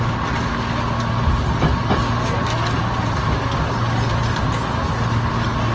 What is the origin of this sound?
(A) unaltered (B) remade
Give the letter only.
A